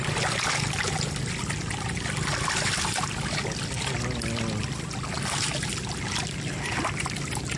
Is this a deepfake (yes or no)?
no